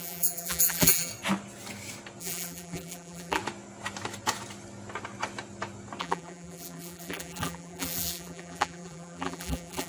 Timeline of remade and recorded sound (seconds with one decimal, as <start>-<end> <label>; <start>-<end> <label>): 0.0-1.1 remade; 1.1-2.2 recorded; 2.2-3.4 remade; 3.4-6.0 recorded; 6.0-9.9 remade